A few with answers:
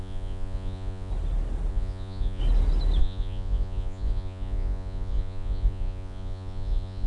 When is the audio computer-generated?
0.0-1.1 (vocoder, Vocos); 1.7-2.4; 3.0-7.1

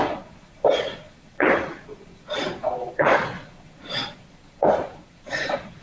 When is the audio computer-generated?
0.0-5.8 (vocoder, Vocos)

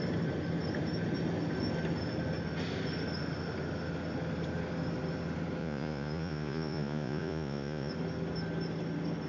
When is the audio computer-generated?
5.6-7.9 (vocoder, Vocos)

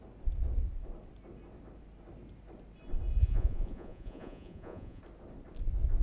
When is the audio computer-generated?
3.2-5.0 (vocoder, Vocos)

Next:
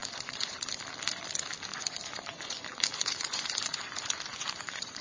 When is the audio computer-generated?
0.0-0.6 (vocoder, Vocos); 1.7-5.0

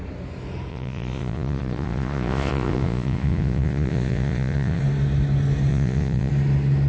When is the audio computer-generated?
0.7-4.8 (vocoder, Vocos); 5.7-6.3